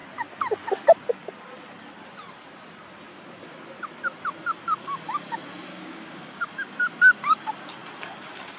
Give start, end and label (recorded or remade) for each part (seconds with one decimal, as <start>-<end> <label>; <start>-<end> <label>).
0.0-3.1 recorded; 3.1-3.6 remade; 3.6-5.7 recorded; 5.7-6.5 remade; 6.5-8.6 recorded